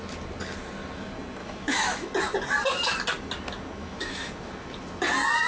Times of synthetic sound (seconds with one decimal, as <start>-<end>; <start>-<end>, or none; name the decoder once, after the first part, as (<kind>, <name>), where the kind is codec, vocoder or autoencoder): 1.4-2.1 (autoencoder, DAC-VAE); 3.8-4.3